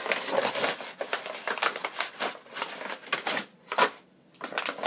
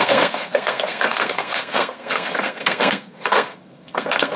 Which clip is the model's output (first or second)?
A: second